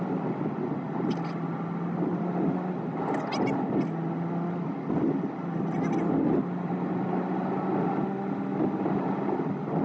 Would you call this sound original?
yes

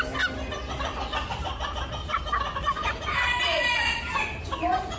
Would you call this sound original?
yes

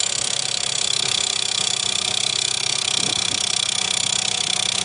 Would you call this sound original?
no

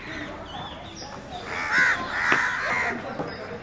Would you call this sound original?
yes